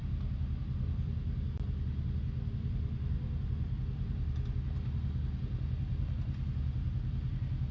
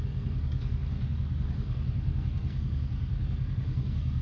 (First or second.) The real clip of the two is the first